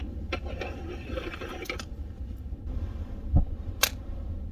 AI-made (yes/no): no